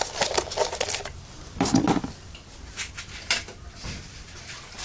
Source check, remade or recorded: recorded